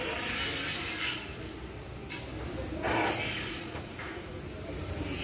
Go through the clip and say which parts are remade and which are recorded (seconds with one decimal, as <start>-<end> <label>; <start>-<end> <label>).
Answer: 0.0-3.6 recorded; 3.6-4.3 remade; 4.3-5.2 recorded